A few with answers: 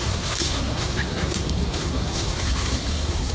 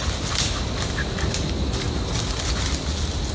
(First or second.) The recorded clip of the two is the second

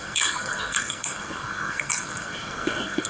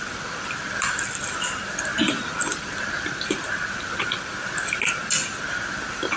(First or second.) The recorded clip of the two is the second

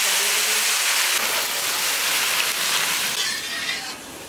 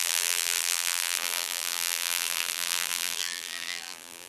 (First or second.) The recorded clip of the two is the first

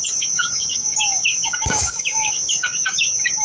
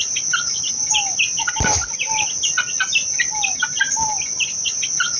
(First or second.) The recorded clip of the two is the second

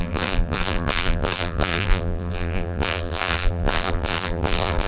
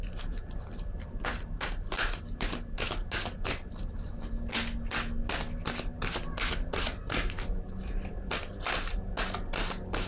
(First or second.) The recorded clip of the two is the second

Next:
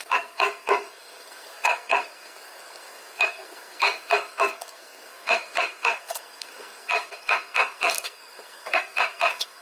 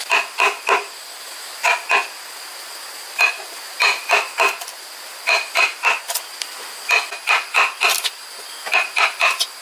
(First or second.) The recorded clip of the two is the second